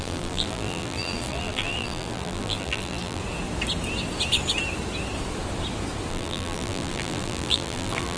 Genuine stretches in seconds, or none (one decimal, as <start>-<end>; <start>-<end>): 3.2-6.1

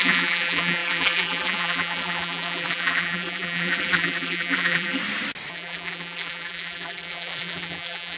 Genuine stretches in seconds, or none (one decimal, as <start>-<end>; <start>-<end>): 5.0-5.5

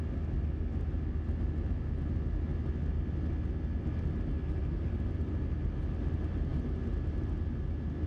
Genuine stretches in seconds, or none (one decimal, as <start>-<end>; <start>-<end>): 0.0-4.6; 5.6-8.1